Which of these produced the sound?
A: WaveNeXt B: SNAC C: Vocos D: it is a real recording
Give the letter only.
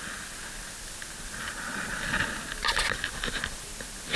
D